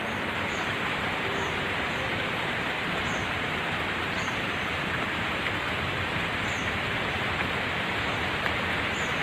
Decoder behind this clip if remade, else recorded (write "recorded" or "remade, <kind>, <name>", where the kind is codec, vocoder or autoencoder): remade, vocoder, BigVGAN v2